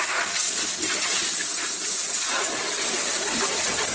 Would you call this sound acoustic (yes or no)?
yes